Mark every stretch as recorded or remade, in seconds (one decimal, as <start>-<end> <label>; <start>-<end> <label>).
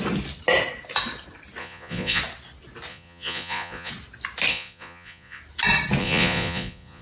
0.0-1.6 recorded; 1.6-2.2 remade; 2.2-2.9 recorded; 2.9-3.9 remade; 3.9-4.5 recorded; 4.5-5.4 remade; 5.4-6.0 recorded; 6.0-7.0 remade